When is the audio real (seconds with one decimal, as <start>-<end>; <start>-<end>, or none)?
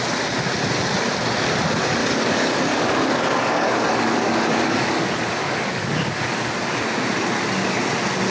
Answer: 0.0-2.0; 5.0-5.4; 6.5-8.3